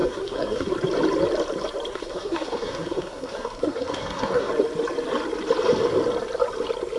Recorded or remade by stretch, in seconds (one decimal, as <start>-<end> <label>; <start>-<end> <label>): 0.0-0.7 remade; 0.7-1.9 recorded; 1.9-4.5 remade; 4.5-7.0 recorded